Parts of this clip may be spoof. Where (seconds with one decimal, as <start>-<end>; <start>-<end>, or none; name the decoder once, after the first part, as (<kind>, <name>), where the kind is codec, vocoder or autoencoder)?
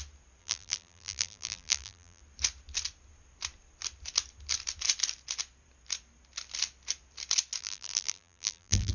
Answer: 0.4-2.2 (vocoder, BigVGAN v2); 7.6-8.9